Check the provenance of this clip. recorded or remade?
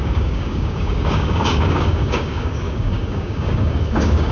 remade